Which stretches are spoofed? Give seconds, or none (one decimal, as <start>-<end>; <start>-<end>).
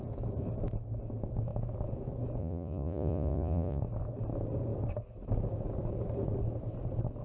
2.4-3.8